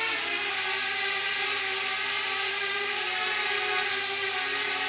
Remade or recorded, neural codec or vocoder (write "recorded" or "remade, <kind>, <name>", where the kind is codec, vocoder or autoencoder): recorded